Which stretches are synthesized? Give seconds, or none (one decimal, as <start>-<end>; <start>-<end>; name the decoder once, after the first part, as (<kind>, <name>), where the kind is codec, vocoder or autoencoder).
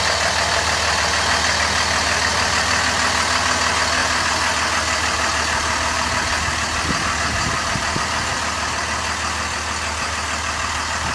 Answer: none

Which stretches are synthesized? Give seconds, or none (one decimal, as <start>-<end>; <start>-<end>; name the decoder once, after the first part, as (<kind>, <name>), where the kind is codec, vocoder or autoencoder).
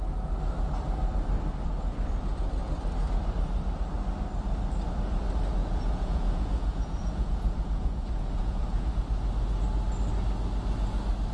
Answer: 5.6-8.9 (vocoder, Vocos)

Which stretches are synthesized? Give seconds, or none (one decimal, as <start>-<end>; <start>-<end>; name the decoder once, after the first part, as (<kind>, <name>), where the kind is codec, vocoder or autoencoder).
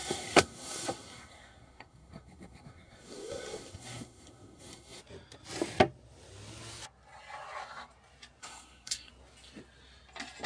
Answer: 0.0-5.0 (codec, SNAC); 8.4-9.1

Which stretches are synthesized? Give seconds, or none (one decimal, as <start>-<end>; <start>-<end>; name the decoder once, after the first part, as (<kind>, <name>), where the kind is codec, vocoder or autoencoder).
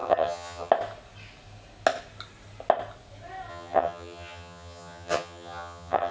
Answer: 0.0-0.7 (vocoder, HiFi-GAN); 3.5-6.1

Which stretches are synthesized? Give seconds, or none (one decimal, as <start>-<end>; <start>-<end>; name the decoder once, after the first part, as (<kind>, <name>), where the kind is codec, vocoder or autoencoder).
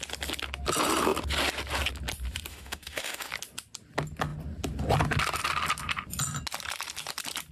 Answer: 2.5-3.3 (autoencoder, DAC-VAE)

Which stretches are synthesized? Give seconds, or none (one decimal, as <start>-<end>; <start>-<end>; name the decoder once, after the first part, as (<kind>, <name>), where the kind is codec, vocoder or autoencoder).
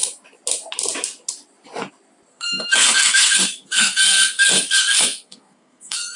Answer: 2.3-6.2 (codec, SNAC)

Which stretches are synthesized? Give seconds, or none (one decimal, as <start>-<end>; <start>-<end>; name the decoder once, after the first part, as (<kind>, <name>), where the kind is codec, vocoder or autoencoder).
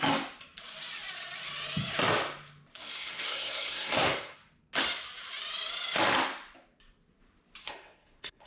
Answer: 2.8-4.4 (codec, SNAC); 7.6-8.5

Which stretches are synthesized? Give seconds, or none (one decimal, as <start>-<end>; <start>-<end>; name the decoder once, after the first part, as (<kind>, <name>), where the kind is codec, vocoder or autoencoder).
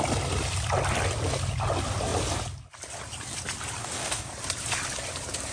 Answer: 3.8-4.3 (codec, DAC)